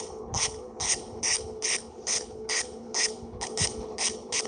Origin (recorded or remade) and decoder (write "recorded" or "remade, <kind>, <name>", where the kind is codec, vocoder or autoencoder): remade, codec, HILCodec